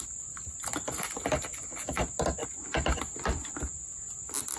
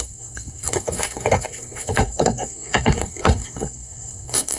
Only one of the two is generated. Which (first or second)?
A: second